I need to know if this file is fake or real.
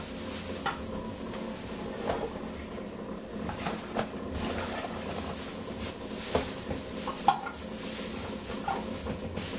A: real